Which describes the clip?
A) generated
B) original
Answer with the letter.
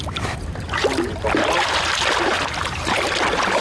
B